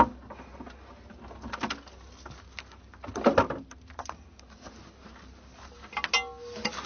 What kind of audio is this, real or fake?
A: real